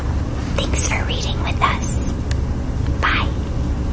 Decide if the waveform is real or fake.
real